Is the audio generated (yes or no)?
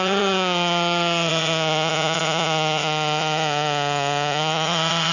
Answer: yes